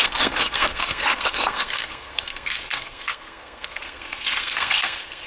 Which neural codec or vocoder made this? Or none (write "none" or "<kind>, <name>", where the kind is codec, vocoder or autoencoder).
codec, SNAC